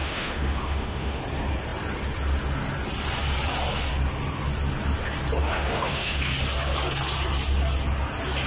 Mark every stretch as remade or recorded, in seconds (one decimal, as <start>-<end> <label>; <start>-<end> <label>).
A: 0.0-1.2 remade; 1.2-5.4 recorded; 5.4-6.3 remade; 6.3-8.5 recorded

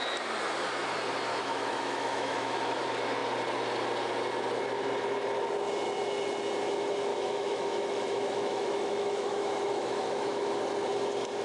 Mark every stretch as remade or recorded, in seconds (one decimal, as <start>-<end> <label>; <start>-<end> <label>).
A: 0.0-1.3 recorded; 1.3-2.8 remade; 2.8-7.1 recorded; 7.1-10.5 remade; 10.5-11.4 recorded

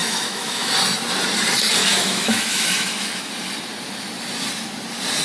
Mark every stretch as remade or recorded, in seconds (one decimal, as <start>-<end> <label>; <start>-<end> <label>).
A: 0.0-0.7 remade; 0.7-1.8 recorded; 1.8-3.3 remade; 3.3-5.2 recorded